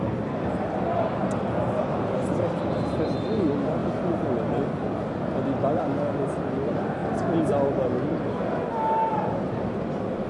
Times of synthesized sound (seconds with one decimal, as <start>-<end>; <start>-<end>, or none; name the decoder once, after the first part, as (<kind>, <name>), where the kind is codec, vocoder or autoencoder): none